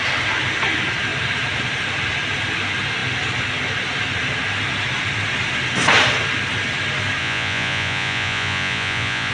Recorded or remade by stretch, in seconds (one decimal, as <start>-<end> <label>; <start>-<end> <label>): 0.0-7.2 recorded; 7.2-9.3 remade